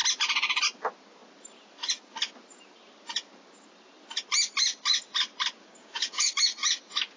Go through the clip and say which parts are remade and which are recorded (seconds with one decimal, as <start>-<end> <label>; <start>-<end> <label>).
0.0-5.6 recorded; 5.6-6.3 remade; 6.3-7.2 recorded